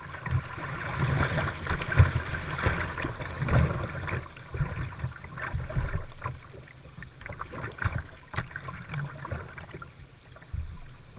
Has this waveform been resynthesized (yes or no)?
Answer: no